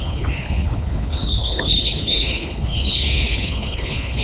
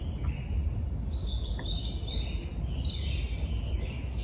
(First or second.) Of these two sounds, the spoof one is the first